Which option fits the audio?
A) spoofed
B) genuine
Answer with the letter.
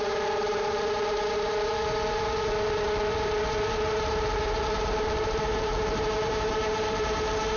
A